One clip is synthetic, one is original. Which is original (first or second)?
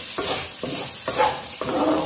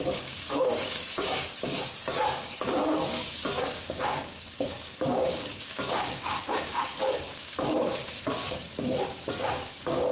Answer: first